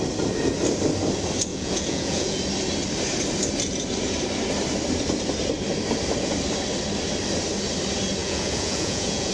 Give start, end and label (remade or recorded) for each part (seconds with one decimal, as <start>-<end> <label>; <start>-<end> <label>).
0.0-1.5 recorded; 1.5-2.4 remade; 2.4-8.2 recorded; 8.2-9.3 remade